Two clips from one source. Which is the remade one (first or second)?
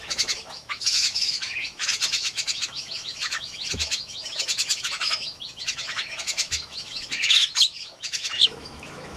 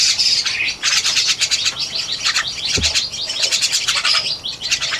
first